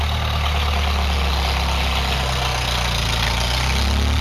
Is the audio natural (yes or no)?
yes